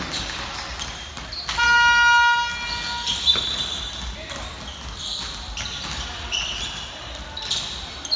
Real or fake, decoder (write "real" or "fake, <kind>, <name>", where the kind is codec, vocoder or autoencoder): real